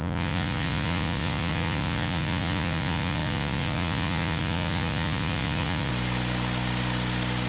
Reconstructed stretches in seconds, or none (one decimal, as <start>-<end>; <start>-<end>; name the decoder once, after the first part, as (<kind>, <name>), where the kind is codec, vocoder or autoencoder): 0.0-5.9 (vocoder, Vocos)